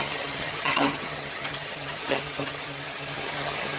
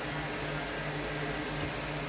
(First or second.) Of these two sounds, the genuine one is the second